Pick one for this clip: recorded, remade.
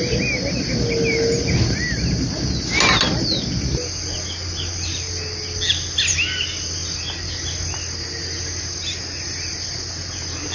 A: recorded